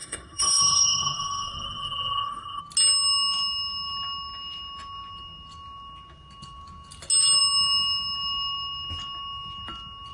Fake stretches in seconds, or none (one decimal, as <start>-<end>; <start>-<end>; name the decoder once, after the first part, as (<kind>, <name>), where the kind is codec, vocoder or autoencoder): 0.0-2.6 (codec, SNAC)